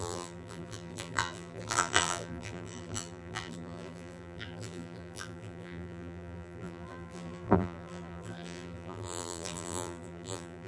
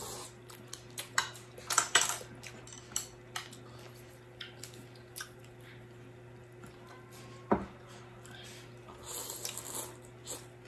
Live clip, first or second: second